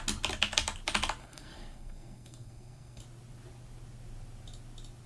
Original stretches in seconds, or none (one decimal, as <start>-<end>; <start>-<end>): 0.0-1.2; 3.0-5.1